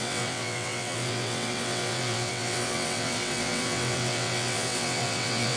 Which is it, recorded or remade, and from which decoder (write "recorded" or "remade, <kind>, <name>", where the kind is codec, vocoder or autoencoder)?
remade, vocoder, WaveNeXt